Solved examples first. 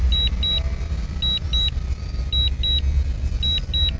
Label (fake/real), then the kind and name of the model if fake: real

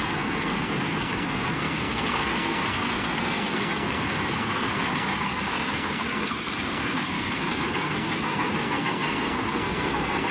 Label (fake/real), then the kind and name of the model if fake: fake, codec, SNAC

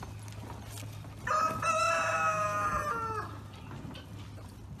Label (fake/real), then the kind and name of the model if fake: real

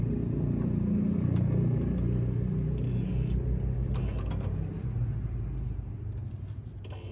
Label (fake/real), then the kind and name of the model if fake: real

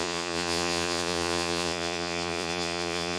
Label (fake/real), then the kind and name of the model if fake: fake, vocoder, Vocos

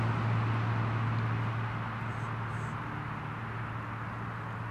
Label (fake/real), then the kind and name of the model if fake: real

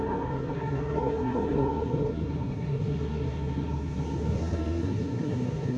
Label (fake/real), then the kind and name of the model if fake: fake, codec, SNAC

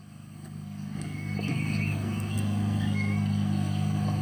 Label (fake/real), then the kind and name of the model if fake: fake, codec, SNAC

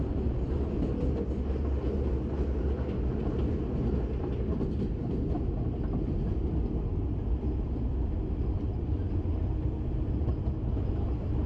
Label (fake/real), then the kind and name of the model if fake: real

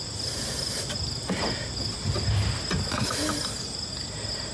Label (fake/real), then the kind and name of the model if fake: real